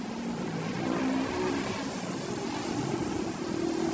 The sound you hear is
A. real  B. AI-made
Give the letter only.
A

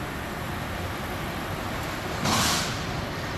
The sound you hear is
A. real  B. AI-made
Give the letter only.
A